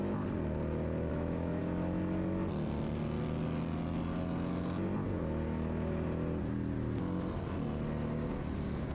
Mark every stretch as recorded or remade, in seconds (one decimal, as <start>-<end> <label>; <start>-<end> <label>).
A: 0.0-1.1 recorded; 1.1-1.6 remade; 1.6-8.9 recorded